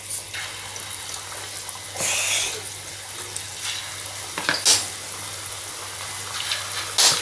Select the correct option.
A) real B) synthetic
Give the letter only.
A